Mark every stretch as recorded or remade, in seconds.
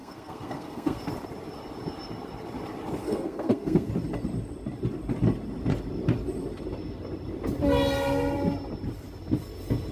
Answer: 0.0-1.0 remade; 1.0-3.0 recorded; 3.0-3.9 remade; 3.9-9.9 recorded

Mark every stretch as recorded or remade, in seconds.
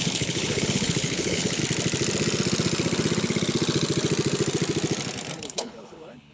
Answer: 0.0-1.6 remade; 1.6-5.4 recorded; 5.4-6.3 remade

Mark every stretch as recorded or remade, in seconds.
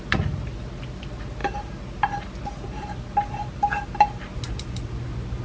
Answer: 0.0-5.4 recorded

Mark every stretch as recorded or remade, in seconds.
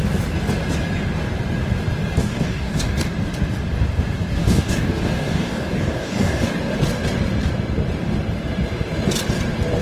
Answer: 0.0-2.2 recorded; 2.2-3.1 remade; 3.1-4.4 recorded; 4.4-6.5 remade; 6.5-9.8 recorded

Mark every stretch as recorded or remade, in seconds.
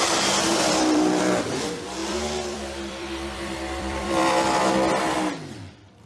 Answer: 0.0-0.5 recorded; 0.5-1.2 remade; 1.2-2.0 recorded; 2.0-4.7 remade; 4.7-6.1 recorded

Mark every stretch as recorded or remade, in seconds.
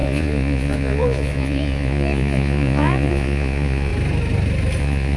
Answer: 0.0-3.9 remade; 3.9-4.8 recorded; 4.8-5.2 remade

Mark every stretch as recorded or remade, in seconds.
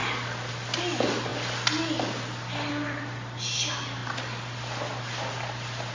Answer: 0.0-5.9 recorded